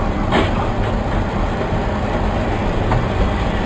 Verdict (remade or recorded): recorded